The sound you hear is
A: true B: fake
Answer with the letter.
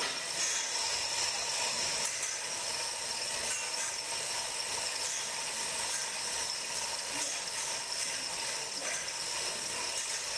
A